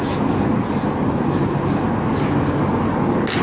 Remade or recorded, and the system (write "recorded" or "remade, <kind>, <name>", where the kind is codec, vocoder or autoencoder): recorded